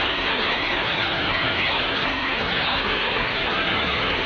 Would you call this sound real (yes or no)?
no